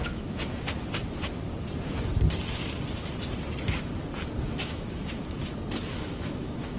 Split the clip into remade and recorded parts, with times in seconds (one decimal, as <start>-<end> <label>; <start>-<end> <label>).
0.0-0.5 remade; 0.5-4.6 recorded; 4.6-5.4 remade; 5.4-5.9 recorded; 5.9-6.8 remade